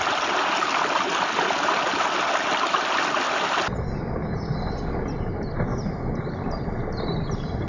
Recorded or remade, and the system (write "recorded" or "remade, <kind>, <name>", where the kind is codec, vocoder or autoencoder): recorded